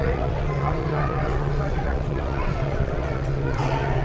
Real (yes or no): no